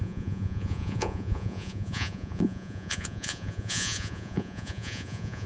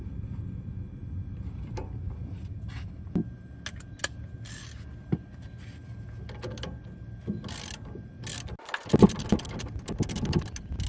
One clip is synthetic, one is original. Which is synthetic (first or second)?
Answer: first